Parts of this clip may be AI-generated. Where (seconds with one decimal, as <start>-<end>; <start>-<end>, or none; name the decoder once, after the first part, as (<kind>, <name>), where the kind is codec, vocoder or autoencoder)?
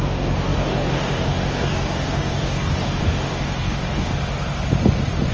0.0-4.1 (codec, DAC)